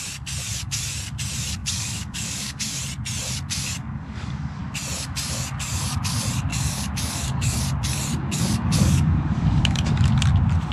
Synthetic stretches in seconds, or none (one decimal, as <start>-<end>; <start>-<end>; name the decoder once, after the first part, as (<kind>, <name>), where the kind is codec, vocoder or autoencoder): 1.6-2.8 (codec, DAC); 3.8-4.6; 6.5-7.6; 8.2-10.1